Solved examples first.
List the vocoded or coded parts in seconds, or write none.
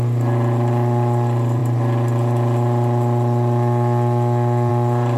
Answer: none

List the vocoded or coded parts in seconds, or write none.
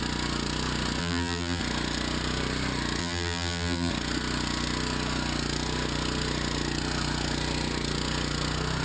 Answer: 1.0-1.6; 3.0-3.9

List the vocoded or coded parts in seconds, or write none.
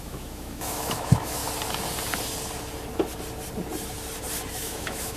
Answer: 0.0-1.4; 4.5-5.2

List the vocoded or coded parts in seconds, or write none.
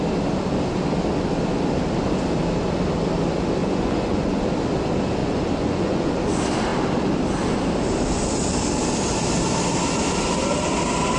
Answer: 3.6-4.4; 5.2-6.1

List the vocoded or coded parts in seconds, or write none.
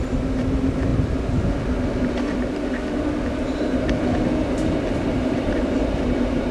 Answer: none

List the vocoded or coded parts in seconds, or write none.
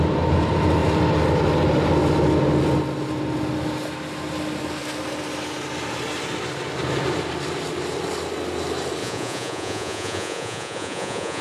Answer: 9.0-11.4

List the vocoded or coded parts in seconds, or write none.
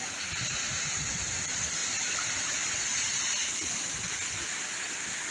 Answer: 1.8-3.2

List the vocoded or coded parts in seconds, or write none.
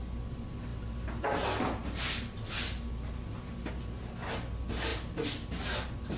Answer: 4.9-5.8